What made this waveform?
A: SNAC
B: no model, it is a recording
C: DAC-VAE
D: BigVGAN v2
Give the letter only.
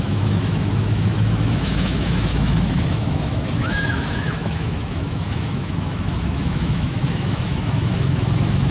C